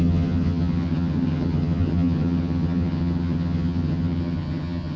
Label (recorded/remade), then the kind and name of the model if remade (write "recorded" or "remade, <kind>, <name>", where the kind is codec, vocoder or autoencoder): remade, vocoder, HiFi-GAN